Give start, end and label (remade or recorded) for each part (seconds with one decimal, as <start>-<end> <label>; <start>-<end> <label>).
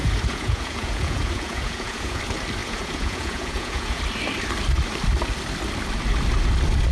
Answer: 0.0-2.2 remade; 2.2-2.6 recorded; 2.6-4.0 remade; 4.0-6.9 recorded